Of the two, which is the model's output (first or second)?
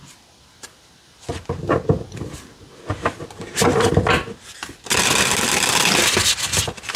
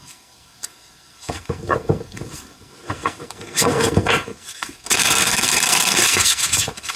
second